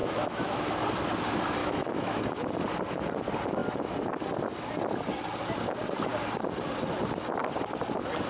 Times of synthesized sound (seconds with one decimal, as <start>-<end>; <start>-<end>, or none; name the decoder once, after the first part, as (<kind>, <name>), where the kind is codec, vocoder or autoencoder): 0.0-0.7 (autoencoder, DAC-VAE); 1.6-2.2